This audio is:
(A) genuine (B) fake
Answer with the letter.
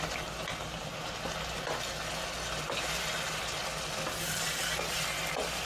A